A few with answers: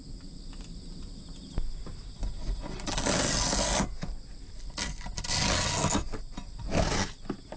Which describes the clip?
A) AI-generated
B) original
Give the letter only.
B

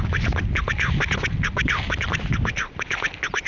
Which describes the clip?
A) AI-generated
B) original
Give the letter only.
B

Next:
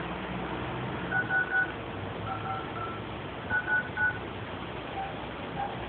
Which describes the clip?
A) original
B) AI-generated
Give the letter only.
A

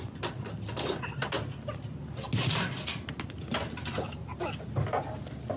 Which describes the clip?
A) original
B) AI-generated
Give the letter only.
A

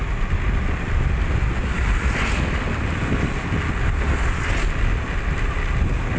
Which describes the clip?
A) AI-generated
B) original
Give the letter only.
B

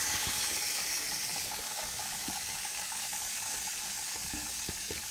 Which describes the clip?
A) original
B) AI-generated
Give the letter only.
B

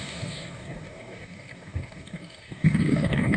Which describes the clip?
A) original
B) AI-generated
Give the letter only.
B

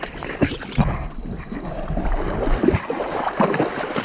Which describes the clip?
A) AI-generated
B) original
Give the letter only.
B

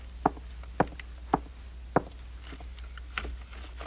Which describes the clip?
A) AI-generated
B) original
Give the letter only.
B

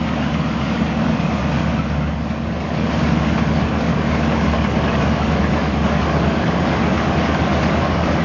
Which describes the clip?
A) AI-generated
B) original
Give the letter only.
A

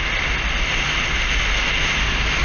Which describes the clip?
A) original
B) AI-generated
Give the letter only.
A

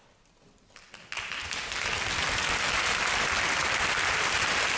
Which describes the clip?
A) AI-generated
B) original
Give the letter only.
B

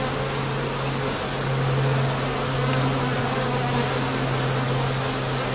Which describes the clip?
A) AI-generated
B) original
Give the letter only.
B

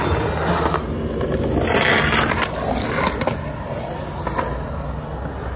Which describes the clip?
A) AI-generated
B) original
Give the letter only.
B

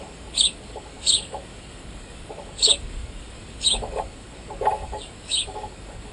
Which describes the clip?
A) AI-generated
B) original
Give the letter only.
A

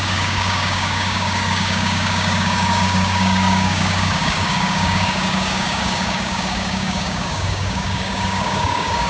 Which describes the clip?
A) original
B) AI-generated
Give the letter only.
B